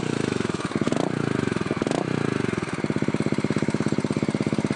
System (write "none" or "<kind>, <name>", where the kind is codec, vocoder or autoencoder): none